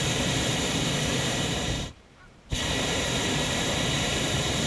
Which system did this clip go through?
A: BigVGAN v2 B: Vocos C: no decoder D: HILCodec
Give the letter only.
A